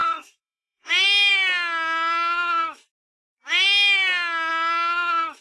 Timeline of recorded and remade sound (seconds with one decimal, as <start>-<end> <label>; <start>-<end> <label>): 0.0-0.9 remade; 0.9-5.4 recorded